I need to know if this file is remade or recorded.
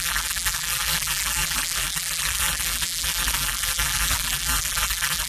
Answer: remade